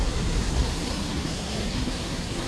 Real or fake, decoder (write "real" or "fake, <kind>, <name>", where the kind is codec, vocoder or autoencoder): fake, codec, SNAC